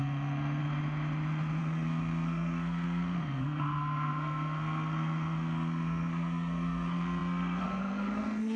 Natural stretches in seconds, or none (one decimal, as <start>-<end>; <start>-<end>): 0.6-1.6

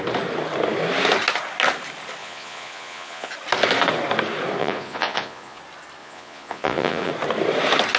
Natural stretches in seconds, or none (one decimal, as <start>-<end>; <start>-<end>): 0.0-2.2; 3.3-4.6; 5.6-6.0; 7.1-8.0

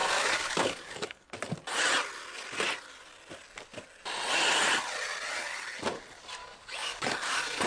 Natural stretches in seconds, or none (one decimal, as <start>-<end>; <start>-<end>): 1.3-6.4

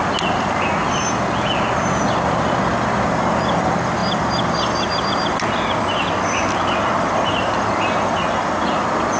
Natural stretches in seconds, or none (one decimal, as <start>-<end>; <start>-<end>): 0.0-4.0; 5.3-9.2

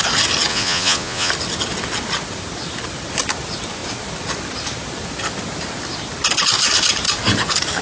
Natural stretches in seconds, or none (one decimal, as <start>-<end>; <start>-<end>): 0.0-0.5; 1.3-7.8

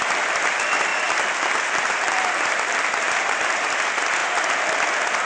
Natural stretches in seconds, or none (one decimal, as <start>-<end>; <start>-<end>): 0.0-0.9; 3.7-5.3

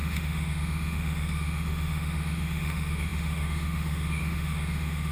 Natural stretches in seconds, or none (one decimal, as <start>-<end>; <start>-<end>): none

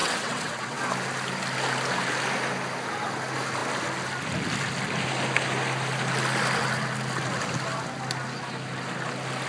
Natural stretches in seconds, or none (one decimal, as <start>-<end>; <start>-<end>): 0.8-9.5